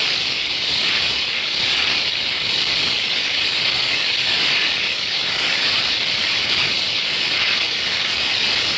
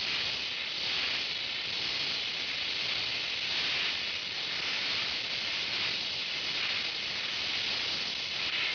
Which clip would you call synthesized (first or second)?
first